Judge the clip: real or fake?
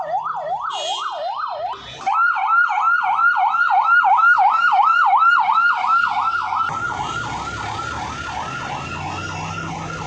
real